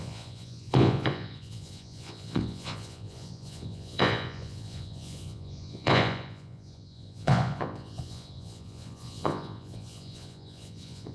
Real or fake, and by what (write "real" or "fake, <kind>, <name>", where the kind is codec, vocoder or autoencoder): fake, vocoder, Vocos